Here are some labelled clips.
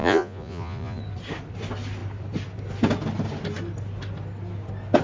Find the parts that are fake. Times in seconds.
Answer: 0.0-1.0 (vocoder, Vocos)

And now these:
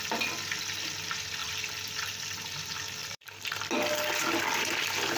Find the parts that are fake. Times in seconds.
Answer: 3.0-3.6 (vocoder, BigVGAN v2)

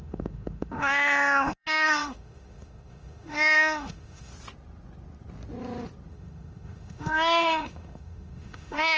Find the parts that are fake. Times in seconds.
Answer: 0.0-4.3 (autoencoder, DAC-VAE); 6.1-9.0

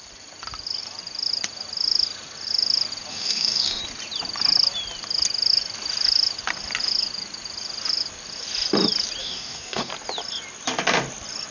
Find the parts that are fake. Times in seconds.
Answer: 3.1-3.8 (codec, DAC); 9.2-9.9

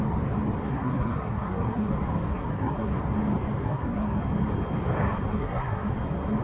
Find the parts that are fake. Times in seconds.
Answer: 0.7-1.9 (codec, SNAC); 2.3-2.9; 3.6-4.2; 5.3-5.9